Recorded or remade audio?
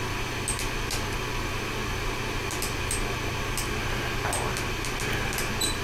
recorded